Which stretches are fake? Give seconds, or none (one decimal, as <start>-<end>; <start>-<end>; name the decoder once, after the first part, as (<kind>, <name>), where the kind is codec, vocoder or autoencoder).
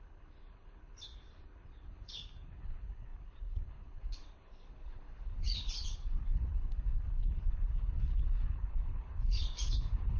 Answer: 0.0-10.2 (codec, HILCodec)